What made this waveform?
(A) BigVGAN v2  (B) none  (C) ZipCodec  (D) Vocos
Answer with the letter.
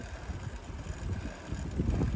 B